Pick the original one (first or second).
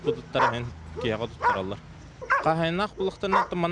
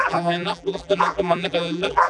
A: first